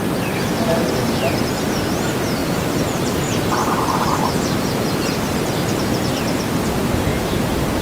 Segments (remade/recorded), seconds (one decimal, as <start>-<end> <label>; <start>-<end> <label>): 0.0-2.4 recorded; 2.4-3.2 remade; 3.2-3.6 recorded; 3.6-6.2 remade; 6.2-7.1 recorded; 7.1-7.8 remade

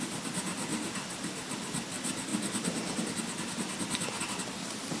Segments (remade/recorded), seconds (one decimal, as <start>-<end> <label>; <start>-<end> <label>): 0.0-0.7 recorded; 0.7-1.5 remade; 1.5-5.0 recorded

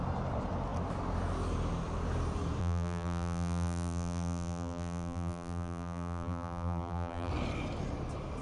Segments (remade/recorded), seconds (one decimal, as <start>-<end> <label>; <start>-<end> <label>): 0.0-2.6 recorded; 2.6-7.3 remade; 7.3-8.4 recorded

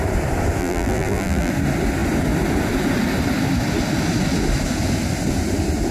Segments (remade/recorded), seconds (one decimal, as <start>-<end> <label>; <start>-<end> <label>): 0.0-0.6 recorded; 0.6-1.5 remade; 1.5-5.9 recorded

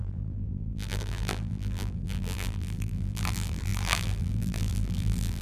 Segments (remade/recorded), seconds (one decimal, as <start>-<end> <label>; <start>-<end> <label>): 0.0-5.4 remade

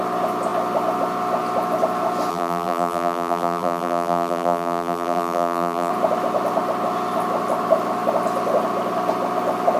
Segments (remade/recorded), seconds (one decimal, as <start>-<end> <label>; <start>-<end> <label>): 0.0-2.3 recorded; 2.3-5.9 remade; 5.9-9.8 recorded

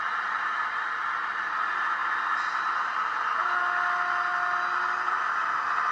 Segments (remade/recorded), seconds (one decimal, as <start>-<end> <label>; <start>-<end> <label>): 0.0-5.9 recorded